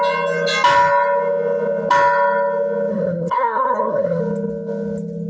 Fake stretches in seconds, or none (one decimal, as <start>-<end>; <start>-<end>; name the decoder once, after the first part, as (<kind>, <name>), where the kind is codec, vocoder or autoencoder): 2.9-4.2 (codec, SNAC)